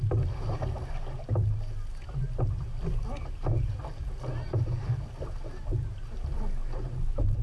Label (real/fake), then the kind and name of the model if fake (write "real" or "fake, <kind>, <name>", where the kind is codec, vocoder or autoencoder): real